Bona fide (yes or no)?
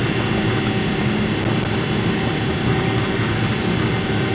yes